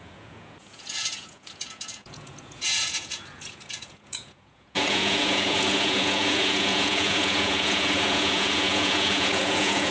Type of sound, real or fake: fake